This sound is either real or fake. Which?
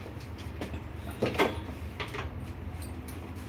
fake